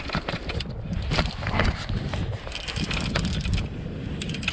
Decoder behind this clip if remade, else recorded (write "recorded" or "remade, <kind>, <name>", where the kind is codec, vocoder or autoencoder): recorded